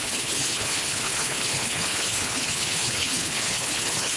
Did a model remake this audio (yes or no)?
yes